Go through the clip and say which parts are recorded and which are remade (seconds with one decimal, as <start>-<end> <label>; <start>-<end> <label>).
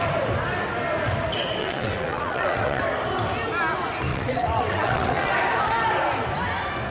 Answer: 0.0-1.6 recorded; 1.6-2.8 remade; 2.8-4.1 recorded; 4.1-5.3 remade; 5.3-6.9 recorded